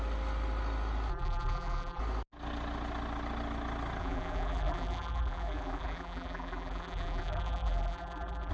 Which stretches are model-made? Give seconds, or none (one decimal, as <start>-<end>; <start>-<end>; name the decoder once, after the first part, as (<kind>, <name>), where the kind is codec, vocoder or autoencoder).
1.1-2.0 (vocoder, BigVGAN v2); 4.0-8.5